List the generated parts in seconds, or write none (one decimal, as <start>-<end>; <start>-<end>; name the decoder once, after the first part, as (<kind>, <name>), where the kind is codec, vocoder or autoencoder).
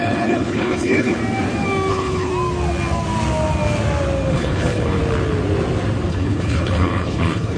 0.0-1.2 (codec, HILCodec); 1.9-2.3; 4.3-5.0; 6.1-7.6